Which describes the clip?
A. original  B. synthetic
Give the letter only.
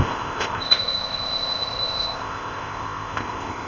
B